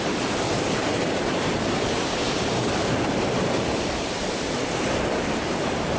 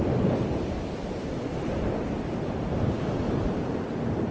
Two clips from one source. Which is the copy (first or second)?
first